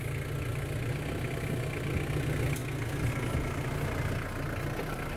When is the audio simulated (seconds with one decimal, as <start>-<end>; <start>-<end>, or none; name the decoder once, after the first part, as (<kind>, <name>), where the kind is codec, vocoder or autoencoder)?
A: none